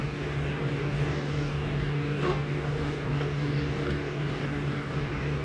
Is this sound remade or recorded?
remade